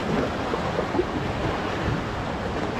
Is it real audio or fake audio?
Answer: real